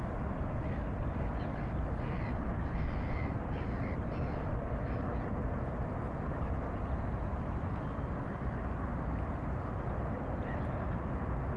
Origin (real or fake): real